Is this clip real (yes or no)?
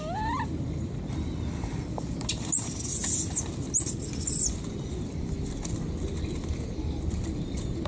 yes